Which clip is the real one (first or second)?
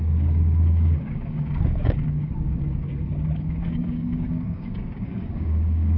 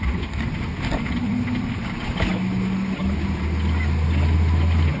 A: second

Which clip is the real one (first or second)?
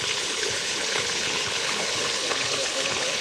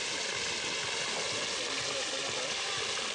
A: second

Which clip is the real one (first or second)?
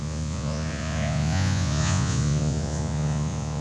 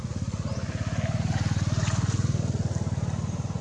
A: second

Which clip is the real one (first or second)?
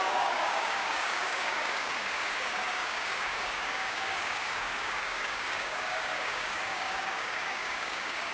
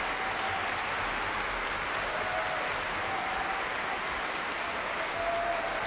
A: second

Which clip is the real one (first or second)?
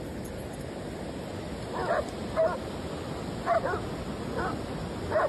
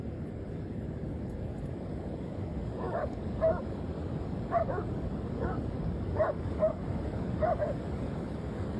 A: first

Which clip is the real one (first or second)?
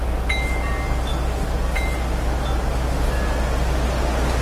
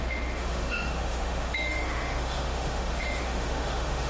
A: first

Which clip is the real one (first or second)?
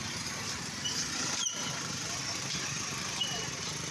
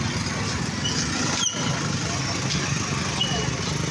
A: second